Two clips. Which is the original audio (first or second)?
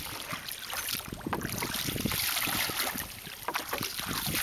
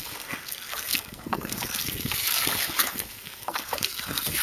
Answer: first